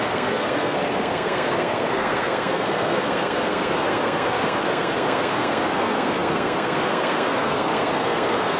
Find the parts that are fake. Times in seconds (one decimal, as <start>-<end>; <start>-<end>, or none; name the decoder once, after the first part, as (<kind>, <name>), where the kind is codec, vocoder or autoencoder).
0.0-8.6 (codec, SNAC)